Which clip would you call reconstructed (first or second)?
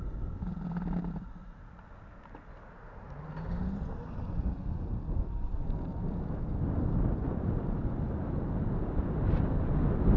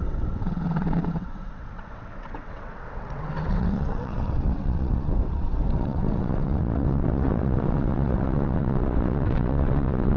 second